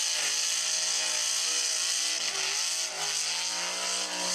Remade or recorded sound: recorded